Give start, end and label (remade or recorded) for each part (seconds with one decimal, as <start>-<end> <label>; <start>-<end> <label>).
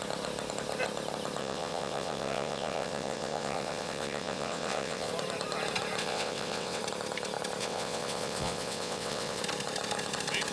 0.0-1.4 recorded; 1.4-5.1 remade; 5.1-6.0 recorded; 6.0-6.8 remade; 6.8-7.6 recorded; 7.6-9.4 remade; 9.4-10.5 recorded